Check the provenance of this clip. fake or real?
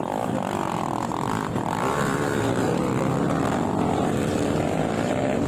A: fake